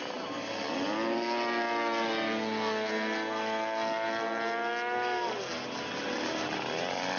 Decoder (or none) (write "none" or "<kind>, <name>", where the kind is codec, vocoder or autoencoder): none